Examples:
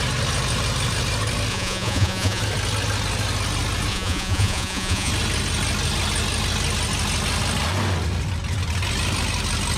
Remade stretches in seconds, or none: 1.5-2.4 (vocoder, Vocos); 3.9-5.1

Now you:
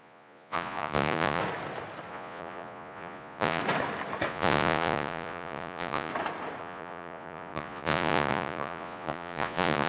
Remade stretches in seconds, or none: 0.0-1.4 (vocoder, Vocos); 2.1-3.6; 4.3-6.1; 6.6-9.9

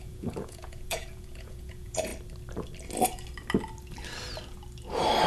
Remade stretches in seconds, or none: 0.0-2.1 (vocoder, Vocos)

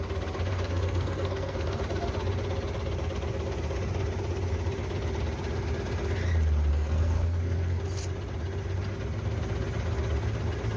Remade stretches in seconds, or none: 0.5-1.8 (codec, SNAC); 6.7-7.8

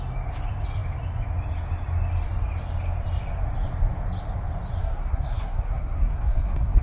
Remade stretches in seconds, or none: 4.8-6.8 (codec, SNAC)

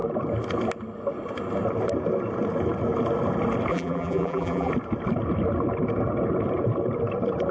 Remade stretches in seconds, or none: 3.7-4.7 (vocoder, BigVGAN v2)

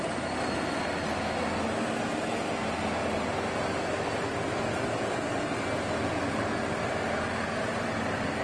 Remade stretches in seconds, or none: none